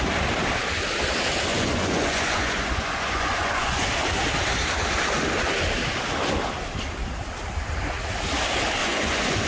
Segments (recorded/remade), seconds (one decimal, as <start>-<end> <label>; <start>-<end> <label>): 0.0-1.5 recorded; 1.5-3.9 remade; 3.9-8.8 recorded; 8.8-9.5 remade